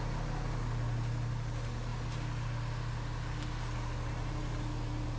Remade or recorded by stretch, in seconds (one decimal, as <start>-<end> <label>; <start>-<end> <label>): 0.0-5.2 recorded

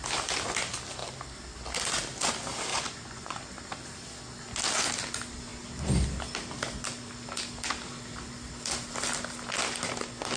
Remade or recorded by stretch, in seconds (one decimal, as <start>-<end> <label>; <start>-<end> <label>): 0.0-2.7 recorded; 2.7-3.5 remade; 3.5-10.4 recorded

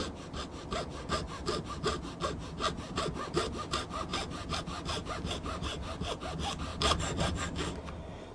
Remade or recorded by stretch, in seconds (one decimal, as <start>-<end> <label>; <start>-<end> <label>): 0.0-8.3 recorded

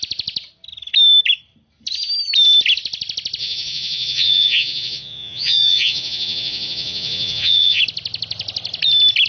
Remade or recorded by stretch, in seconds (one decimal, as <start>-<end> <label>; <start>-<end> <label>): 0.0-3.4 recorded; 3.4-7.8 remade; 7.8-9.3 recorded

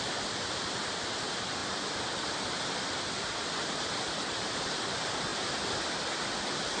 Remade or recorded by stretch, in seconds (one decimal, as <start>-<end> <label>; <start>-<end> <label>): 0.0-6.8 recorded